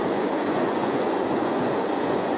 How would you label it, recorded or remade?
remade